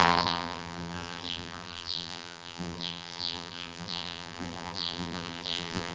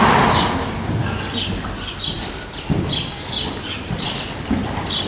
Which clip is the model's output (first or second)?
first